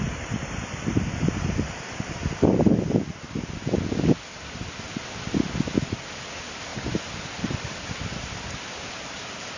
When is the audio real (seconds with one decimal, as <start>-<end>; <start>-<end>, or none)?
0.0-9.6